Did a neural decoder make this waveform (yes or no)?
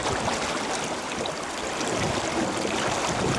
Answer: no